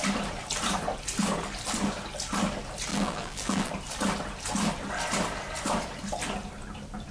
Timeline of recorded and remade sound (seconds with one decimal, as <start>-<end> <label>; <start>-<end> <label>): 0.0-2.9 recorded; 2.9-3.7 remade; 3.7-7.1 recorded